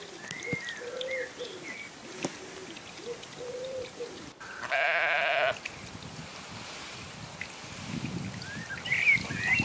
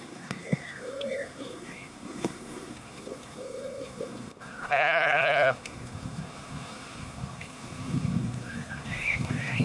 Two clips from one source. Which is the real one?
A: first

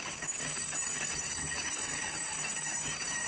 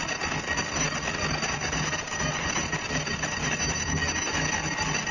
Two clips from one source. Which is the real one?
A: second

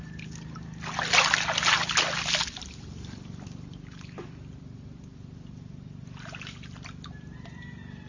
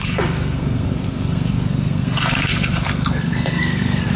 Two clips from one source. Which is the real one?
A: first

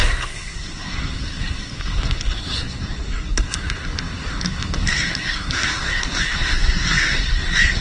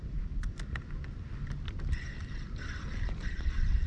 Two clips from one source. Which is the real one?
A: second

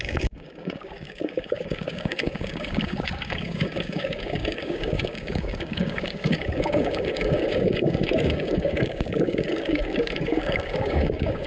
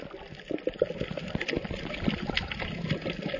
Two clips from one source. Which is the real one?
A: second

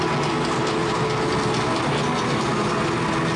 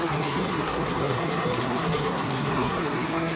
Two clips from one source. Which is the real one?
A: first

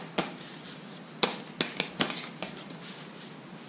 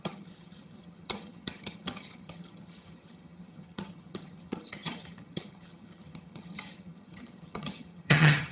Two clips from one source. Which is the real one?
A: first